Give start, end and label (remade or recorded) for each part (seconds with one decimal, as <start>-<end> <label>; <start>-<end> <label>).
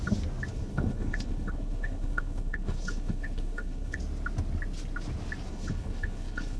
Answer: 0.0-0.5 recorded; 0.5-4.0 remade; 4.0-5.5 recorded; 5.5-6.6 remade